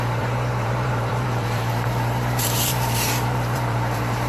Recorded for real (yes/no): no